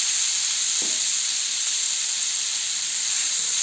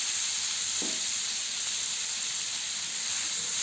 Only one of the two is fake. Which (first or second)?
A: first